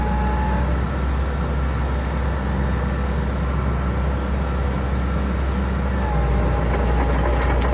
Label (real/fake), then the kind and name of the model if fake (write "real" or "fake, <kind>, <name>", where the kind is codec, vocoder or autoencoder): real